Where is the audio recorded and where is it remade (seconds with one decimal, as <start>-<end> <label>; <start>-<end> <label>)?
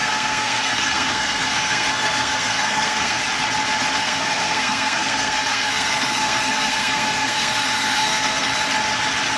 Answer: 0.0-3.2 remade; 3.2-4.0 recorded; 4.0-8.5 remade; 8.5-9.4 recorded